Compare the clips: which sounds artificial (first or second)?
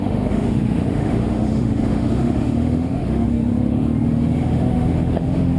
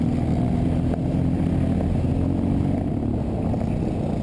first